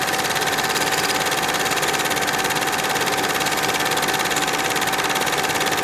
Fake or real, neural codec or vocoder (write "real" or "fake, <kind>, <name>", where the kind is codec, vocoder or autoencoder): real